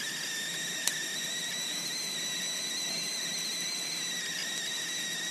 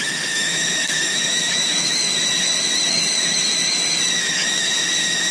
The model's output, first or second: second